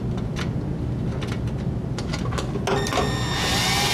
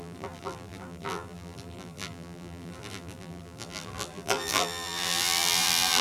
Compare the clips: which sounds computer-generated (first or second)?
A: second